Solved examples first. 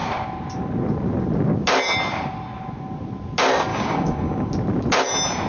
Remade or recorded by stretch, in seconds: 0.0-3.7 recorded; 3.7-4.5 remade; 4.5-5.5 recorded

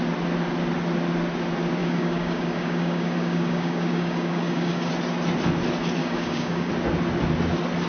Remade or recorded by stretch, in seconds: 0.0-1.8 recorded; 1.8-4.9 remade; 4.9-6.0 recorded; 6.0-6.7 remade; 6.7-7.9 recorded

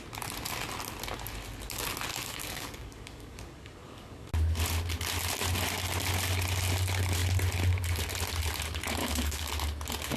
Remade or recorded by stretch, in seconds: 0.0-2.1 recorded; 2.1-4.3 remade; 4.3-9.0 recorded; 9.0-9.5 remade; 9.5-10.2 recorded

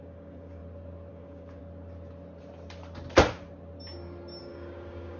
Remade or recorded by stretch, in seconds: 0.0-0.6 remade; 0.6-1.1 recorded; 1.1-1.6 remade; 1.6-4.4 recorded; 4.4-5.2 remade

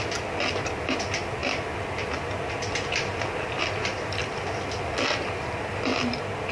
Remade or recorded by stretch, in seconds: 0.0-6.5 recorded

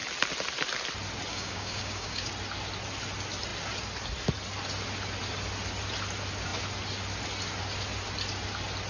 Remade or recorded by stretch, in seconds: 0.0-1.3 recorded; 1.3-2.3 remade; 2.3-8.9 recorded

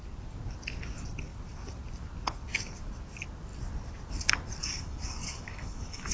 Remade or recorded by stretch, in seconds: 0.0-4.6 recorded; 4.6-6.1 remade

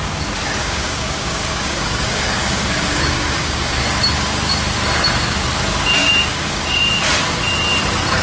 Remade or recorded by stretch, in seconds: 0.0-0.6 recorded; 0.6-3.8 remade; 3.8-6.0 recorded; 6.0-6.9 remade; 6.9-8.2 recorded